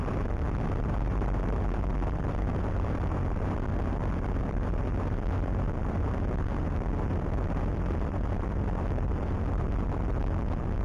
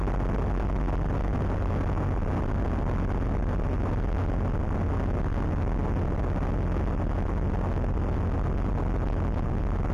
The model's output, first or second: first